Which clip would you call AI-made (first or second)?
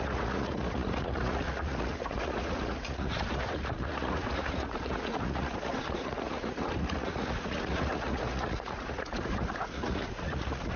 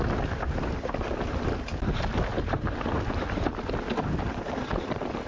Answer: first